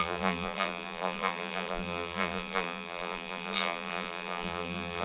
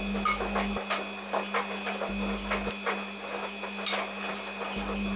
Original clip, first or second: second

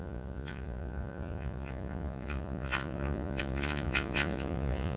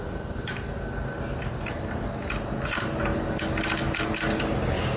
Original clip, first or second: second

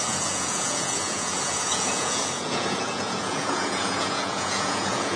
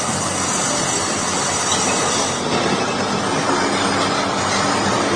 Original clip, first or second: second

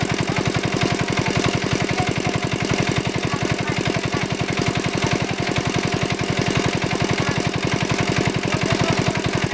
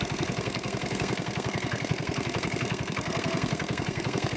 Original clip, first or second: first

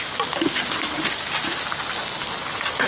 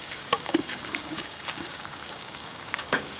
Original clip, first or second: first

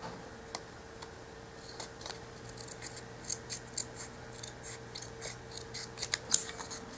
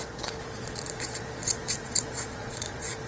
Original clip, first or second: first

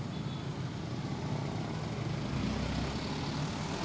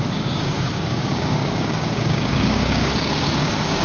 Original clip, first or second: first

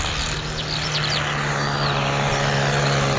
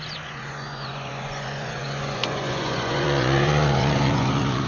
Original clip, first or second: first